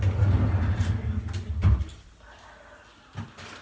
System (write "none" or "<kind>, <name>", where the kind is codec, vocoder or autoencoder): none